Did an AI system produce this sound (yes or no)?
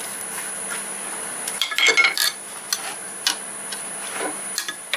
no